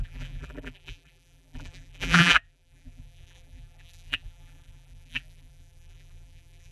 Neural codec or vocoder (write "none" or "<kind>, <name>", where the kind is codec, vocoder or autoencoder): vocoder, BigVGAN v2